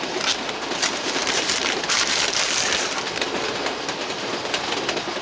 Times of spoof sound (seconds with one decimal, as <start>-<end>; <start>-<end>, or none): none